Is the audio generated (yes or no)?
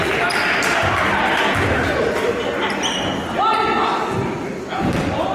no